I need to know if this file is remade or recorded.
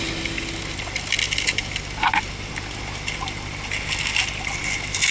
recorded